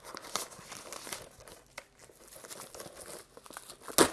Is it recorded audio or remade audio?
recorded